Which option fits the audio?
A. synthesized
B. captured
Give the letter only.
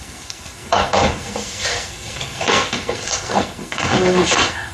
A